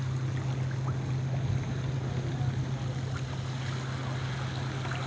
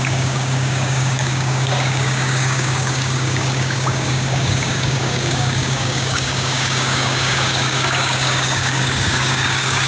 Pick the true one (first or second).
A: first